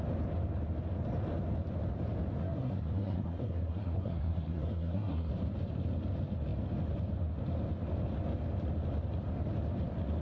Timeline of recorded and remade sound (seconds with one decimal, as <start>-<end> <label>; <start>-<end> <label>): 0.0-2.4 recorded; 2.4-5.3 remade; 5.3-10.2 recorded